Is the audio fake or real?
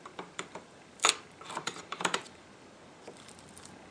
fake